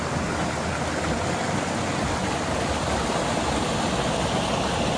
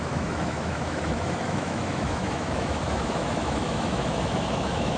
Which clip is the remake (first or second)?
second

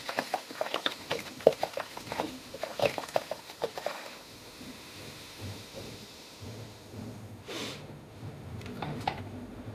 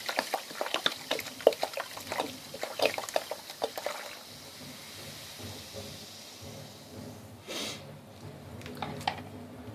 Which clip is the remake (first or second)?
first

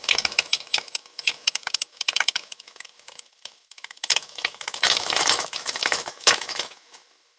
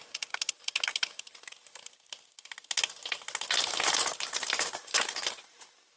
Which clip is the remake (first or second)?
first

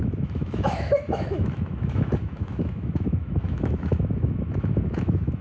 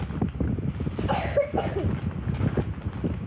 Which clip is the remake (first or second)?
first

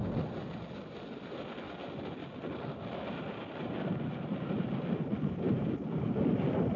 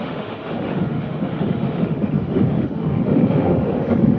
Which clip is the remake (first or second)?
second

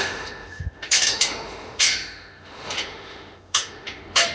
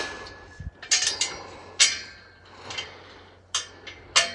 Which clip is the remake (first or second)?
first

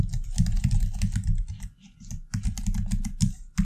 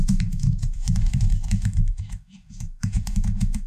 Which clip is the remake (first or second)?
second